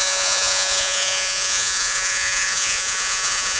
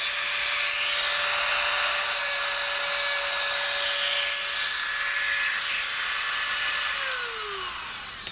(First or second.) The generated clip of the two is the first